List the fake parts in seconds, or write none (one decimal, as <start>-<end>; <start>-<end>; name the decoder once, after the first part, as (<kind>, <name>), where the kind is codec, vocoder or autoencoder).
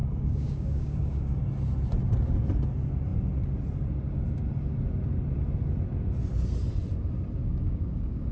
0.0-1.4 (codec, DAC); 7.4-8.3